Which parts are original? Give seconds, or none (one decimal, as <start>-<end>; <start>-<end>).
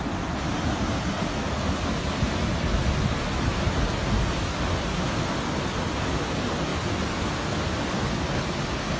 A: 0.0-9.0